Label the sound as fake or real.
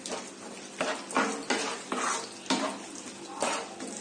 real